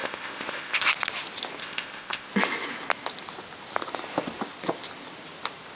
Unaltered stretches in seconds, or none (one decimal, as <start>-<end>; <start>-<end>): 0.9-1.6; 2.3-5.8